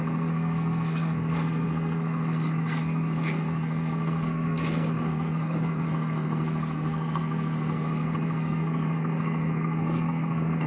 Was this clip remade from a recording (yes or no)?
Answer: yes